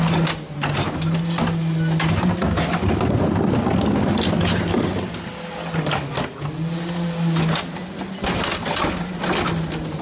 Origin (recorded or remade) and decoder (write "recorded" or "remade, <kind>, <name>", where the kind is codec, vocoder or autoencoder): recorded